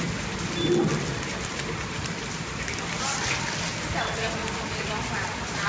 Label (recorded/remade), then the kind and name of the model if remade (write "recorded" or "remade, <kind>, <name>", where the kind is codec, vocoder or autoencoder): recorded